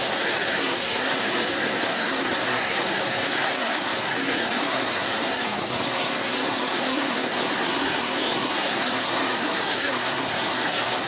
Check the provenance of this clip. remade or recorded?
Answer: remade